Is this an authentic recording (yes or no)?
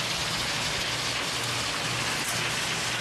yes